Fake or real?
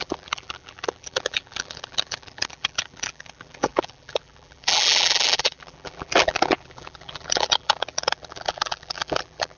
fake